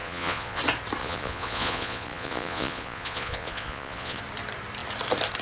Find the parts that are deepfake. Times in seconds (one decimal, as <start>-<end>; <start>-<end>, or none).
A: 0.0-0.6; 1.0-4.2